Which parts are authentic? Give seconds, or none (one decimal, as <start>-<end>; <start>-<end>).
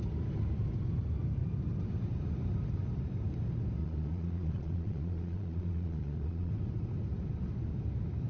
0.0-3.8; 6.5-8.3